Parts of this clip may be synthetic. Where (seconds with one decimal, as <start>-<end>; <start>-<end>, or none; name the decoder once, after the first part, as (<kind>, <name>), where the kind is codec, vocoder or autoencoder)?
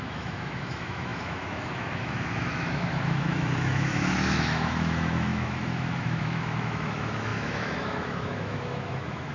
0.0-9.3 (autoencoder, DAC-VAE)